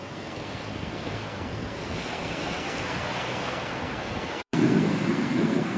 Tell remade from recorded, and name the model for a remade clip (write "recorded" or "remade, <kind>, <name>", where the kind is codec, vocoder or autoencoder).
remade, codec, SNAC